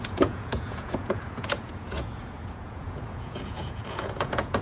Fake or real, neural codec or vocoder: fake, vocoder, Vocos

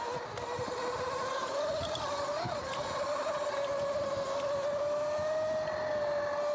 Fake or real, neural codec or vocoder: real